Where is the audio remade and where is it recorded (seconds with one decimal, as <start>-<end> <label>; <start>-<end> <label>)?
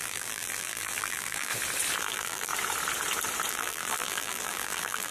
0.0-1.5 remade; 1.5-2.0 recorded; 2.0-2.5 remade; 2.5-3.5 recorded; 3.5-5.1 remade